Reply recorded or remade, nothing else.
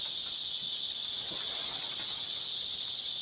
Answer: recorded